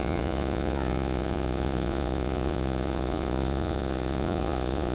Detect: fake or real fake